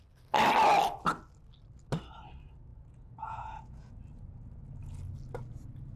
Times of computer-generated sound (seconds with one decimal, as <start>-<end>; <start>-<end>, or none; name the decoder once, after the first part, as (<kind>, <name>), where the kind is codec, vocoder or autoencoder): 2.7-3.9 (vocoder, Vocos)